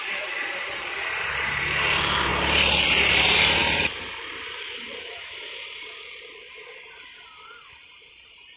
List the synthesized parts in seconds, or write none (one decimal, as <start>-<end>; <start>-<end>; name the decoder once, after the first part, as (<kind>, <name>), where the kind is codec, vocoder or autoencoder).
0.0-8.6 (vocoder, BigVGAN v2)